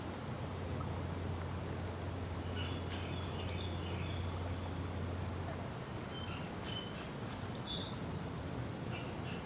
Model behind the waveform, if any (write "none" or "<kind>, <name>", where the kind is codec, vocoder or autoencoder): none